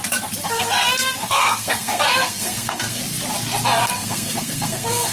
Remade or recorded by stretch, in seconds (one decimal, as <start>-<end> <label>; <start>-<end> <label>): 0.0-0.5 recorded; 0.5-3.0 remade; 3.0-3.8 recorded; 3.8-5.1 remade